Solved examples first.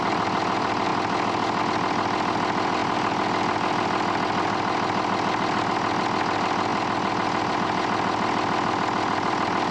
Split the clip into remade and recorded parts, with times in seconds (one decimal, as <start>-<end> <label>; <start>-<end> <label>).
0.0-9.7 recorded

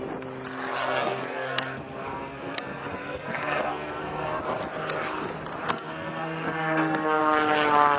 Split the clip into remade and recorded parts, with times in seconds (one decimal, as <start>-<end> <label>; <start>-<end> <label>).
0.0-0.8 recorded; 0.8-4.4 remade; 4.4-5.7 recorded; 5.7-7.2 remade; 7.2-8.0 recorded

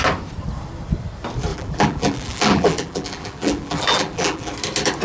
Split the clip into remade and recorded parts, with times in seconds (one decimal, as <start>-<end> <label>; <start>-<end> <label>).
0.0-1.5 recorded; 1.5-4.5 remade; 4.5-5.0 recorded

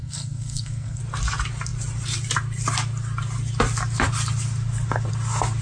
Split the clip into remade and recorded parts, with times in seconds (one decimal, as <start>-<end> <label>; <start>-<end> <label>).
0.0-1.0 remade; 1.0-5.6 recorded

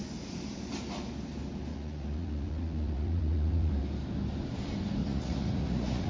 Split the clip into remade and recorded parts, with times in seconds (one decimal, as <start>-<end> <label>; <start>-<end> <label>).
0.0-1.7 recorded; 1.7-3.7 remade; 3.7-5.0 recorded; 5.0-6.1 remade

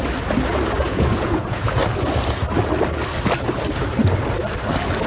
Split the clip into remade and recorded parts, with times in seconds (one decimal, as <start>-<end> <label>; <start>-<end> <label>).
0.0-0.8 recorded; 0.8-1.8 remade; 1.8-5.1 recorded